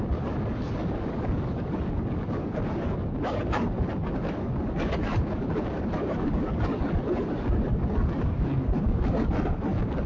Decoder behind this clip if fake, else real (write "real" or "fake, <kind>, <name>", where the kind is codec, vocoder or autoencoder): fake, codec, DAC